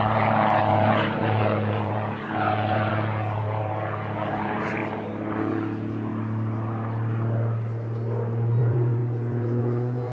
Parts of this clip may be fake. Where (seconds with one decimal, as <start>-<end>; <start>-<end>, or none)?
0.0-4.8; 5.4-6.1; 8.6-10.1